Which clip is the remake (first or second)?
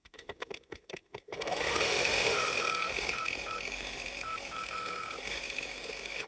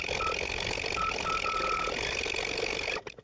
first